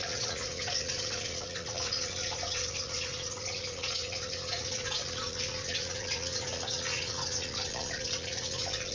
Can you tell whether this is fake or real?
fake